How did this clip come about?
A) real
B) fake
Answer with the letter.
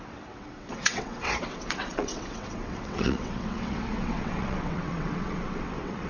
B